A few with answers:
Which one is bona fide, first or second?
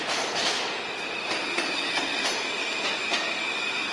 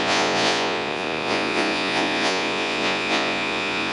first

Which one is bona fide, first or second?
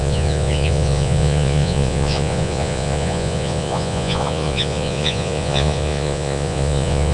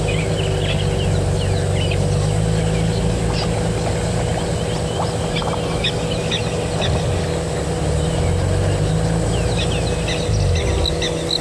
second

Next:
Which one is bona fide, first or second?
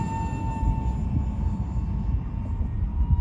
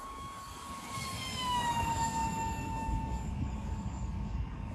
first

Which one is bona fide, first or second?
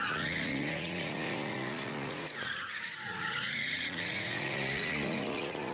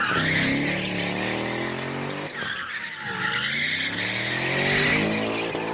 second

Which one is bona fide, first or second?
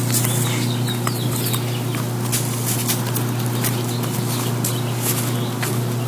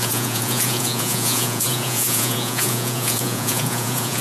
first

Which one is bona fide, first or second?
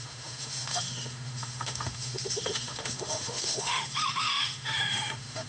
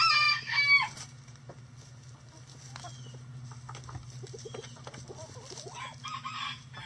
second